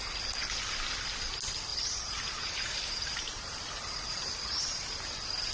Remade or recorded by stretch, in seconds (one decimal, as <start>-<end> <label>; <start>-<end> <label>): 0.0-1.7 recorded; 1.7-5.0 remade; 5.0-5.5 recorded